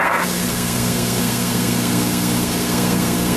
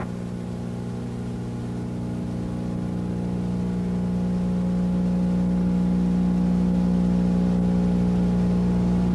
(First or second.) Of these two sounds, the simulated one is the first